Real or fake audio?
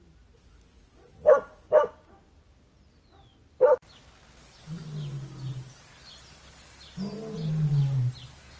real